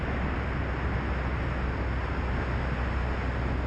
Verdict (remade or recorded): recorded